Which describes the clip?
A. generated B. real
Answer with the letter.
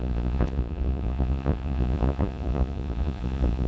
A